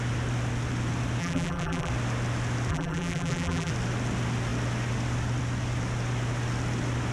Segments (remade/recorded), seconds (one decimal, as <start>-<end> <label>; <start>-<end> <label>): 0.0-1.2 recorded; 1.2-1.9 remade; 1.9-2.7 recorded; 2.7-3.7 remade; 3.7-7.1 recorded